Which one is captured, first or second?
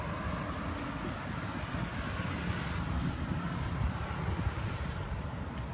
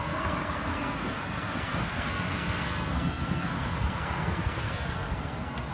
first